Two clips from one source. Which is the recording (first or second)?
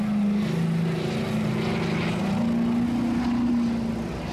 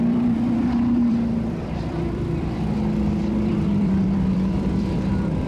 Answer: first